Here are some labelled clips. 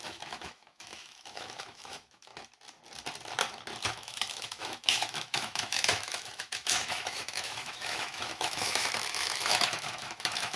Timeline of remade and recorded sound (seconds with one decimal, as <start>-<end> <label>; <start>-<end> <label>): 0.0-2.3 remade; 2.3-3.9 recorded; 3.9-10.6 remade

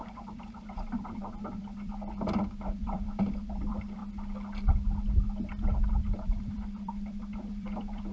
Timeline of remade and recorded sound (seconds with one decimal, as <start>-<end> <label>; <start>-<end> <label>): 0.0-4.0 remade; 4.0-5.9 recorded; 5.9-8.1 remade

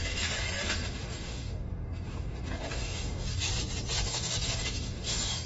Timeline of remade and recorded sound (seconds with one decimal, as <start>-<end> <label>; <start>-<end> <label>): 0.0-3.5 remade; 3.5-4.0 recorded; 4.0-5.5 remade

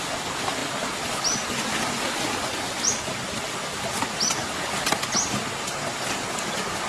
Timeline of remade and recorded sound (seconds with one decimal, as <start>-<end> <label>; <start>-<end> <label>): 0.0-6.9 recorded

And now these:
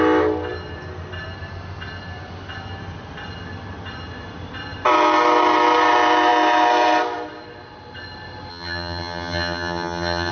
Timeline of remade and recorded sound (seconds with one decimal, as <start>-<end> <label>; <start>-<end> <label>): 0.0-8.5 recorded; 8.5-10.3 remade